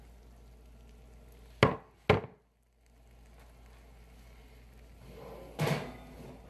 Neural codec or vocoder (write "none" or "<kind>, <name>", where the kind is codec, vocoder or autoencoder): none